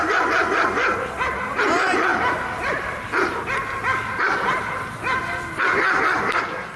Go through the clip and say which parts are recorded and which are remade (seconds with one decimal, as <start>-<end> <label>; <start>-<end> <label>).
0.0-6.8 recorded